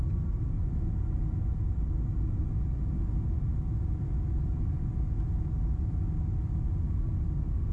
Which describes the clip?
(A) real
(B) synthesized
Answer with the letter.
A